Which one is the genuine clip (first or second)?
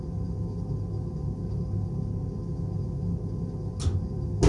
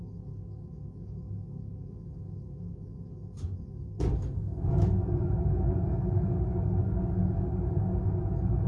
first